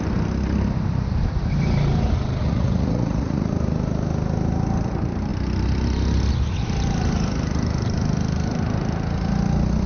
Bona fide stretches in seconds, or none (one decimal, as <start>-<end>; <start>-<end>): 0.0-2.4; 3.5-9.9